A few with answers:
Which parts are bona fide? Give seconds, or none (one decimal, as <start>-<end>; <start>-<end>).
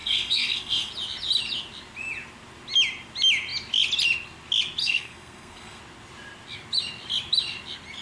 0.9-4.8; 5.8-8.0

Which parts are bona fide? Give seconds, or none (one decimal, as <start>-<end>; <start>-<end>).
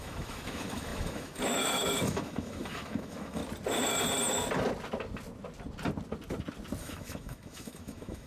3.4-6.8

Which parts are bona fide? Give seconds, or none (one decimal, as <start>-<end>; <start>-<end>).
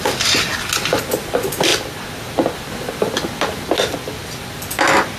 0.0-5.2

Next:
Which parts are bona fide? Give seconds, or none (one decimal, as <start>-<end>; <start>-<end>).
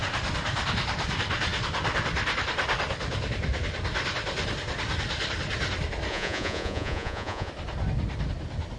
0.0-6.1; 7.5-8.8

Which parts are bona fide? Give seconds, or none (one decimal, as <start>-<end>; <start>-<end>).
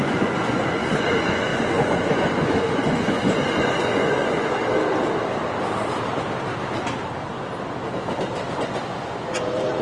4.6-8.6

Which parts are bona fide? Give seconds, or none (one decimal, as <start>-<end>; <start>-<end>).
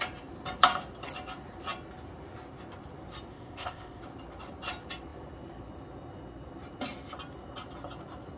0.0-3.3; 4.0-8.4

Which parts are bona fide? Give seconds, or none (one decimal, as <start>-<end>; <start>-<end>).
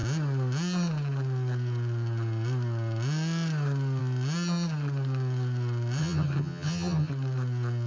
0.0-6.0; 7.1-7.9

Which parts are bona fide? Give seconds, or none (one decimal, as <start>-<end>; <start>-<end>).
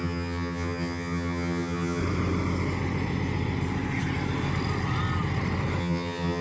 2.0-5.8